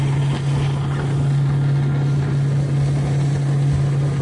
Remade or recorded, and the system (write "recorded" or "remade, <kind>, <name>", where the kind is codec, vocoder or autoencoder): recorded